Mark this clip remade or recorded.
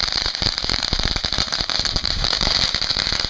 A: remade